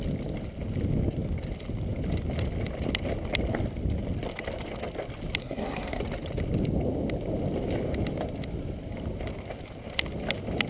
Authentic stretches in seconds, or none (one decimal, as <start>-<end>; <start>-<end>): 0.0-5.4; 6.0-10.7